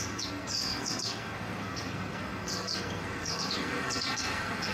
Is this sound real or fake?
fake